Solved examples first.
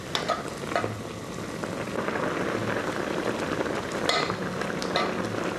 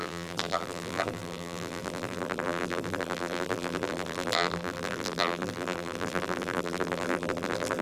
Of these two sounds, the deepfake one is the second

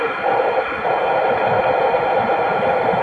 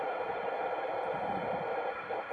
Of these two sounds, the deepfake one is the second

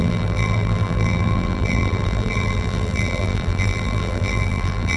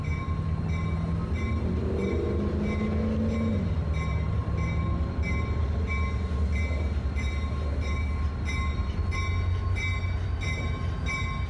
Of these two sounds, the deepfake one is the first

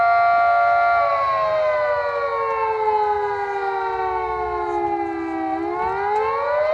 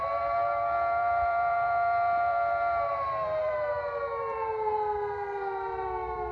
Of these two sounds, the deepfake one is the second